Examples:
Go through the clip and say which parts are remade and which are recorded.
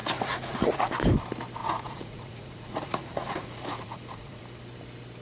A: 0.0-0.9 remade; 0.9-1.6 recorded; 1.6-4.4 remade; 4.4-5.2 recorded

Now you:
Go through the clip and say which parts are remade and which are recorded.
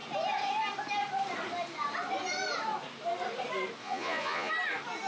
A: 0.0-3.8 recorded; 3.8-4.5 remade; 4.5-5.1 recorded